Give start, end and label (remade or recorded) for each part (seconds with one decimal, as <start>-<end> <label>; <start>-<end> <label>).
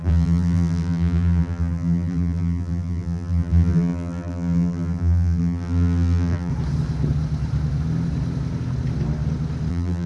0.0-6.5 remade; 6.5-9.7 recorded; 9.7-10.1 remade